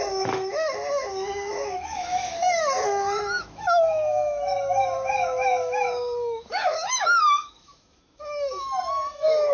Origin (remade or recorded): remade